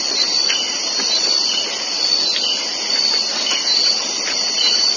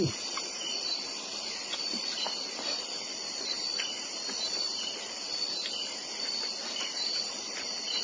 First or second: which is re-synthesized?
second